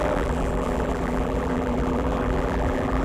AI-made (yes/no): yes